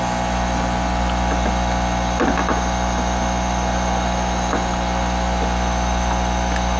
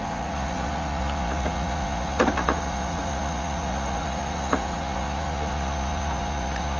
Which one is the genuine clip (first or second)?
first